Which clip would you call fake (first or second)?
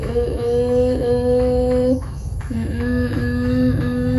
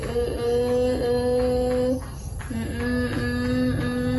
first